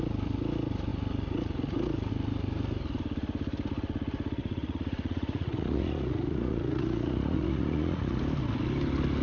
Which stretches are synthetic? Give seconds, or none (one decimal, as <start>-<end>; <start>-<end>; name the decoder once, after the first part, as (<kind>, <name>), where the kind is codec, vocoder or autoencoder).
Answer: 4.4-8.2 (vocoder, Vocos)

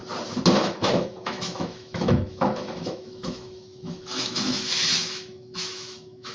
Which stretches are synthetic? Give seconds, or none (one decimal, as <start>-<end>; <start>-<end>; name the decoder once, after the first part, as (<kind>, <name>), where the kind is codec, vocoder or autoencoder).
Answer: 0.6-6.3 (autoencoder, DAC-VAE)

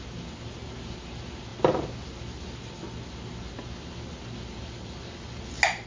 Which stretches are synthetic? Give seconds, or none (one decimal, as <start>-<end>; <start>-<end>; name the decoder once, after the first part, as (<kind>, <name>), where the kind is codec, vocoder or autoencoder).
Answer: none

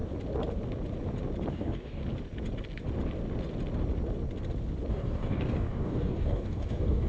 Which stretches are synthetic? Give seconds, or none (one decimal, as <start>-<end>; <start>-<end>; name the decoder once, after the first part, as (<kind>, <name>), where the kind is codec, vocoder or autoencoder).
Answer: 1.5-2.0 (codec, DAC); 4.9-7.1